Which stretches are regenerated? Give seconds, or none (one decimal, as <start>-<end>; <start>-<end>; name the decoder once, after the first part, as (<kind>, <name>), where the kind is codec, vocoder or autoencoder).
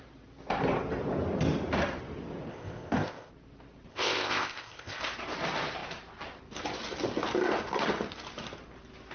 2.5-3.3 (codec, ZipCodec); 3.9-5.0